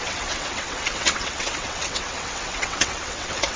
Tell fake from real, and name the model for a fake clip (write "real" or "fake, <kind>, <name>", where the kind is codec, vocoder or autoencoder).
fake, vocoder, WaveNeXt